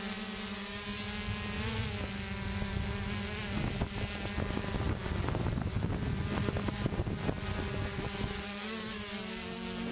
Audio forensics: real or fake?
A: real